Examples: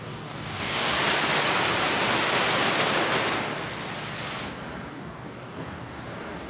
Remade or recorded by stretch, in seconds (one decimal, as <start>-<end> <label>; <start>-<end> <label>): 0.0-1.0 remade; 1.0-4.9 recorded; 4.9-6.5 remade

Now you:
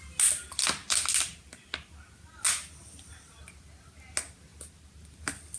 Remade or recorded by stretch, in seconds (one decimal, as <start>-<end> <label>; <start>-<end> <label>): 0.0-5.6 recorded

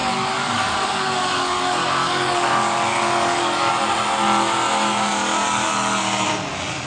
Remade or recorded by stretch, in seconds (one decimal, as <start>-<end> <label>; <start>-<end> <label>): 0.0-3.7 remade; 3.7-6.9 recorded